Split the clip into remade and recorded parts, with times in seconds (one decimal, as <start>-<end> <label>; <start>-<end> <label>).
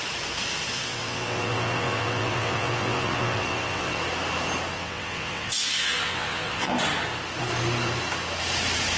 0.0-0.7 recorded; 0.7-4.0 remade; 4.0-4.7 recorded; 4.7-6.7 remade; 6.7-9.0 recorded